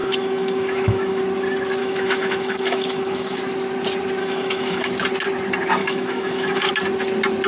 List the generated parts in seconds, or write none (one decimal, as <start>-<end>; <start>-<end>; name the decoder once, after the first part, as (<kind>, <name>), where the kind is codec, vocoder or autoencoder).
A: 0.0-1.2 (autoencoder, DAC-VAE); 1.8-3.4; 4.2-4.9; 5.8-6.7